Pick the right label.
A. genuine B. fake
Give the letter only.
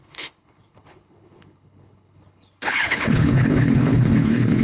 B